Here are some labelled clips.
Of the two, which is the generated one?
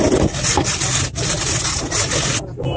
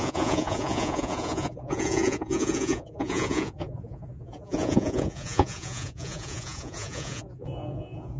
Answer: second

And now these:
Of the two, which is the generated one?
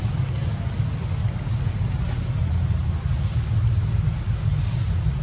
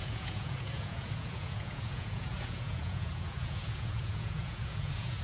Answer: second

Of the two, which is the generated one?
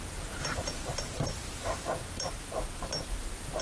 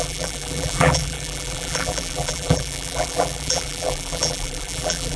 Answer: second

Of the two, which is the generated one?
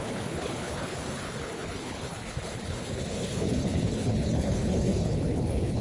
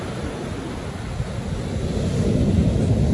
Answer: first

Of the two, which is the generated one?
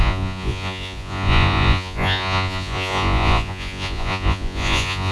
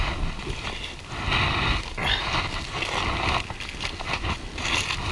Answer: first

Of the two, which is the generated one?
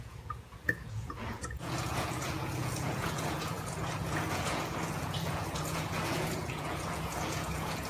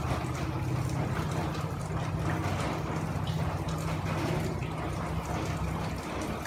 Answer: first